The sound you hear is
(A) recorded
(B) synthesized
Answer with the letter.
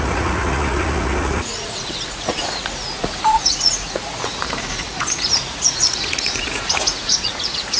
B